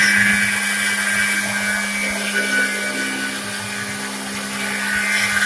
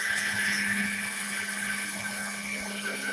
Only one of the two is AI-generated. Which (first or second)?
second